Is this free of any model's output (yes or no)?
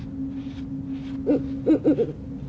yes